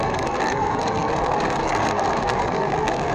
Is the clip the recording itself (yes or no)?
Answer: no